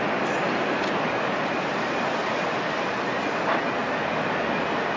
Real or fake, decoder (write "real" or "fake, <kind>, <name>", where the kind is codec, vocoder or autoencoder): real